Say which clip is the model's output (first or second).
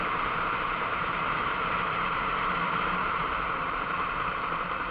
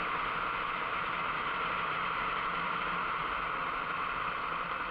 first